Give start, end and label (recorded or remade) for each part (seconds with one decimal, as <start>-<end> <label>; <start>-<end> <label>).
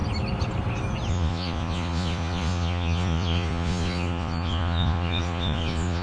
0.0-1.1 recorded; 1.1-6.0 remade